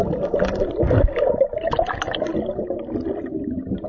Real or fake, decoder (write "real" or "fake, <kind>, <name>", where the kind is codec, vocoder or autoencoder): real